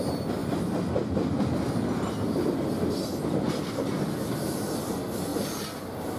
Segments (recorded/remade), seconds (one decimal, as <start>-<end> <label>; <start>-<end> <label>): 0.0-6.2 recorded